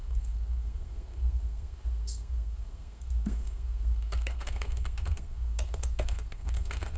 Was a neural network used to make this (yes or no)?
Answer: yes